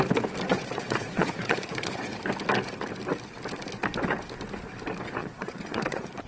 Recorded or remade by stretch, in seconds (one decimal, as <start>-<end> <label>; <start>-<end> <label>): 0.0-0.5 recorded; 0.5-2.2 remade; 2.2-5.2 recorded; 5.2-6.3 remade